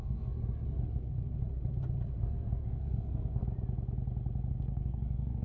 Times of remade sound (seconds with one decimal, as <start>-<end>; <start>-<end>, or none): 0.0-0.4; 0.9-1.3; 2.2-3.4; 4.5-5.4